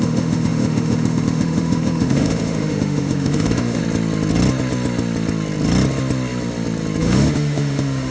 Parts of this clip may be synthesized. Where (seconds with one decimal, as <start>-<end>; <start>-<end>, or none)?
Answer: 0.0-3.8; 7.0-8.1